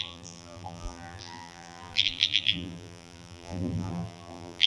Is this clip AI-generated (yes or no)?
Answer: yes